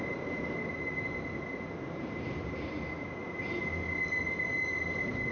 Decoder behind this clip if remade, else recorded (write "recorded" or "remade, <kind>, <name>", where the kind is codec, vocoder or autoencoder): recorded